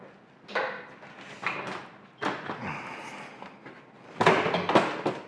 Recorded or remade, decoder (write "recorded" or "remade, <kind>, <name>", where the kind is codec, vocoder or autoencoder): recorded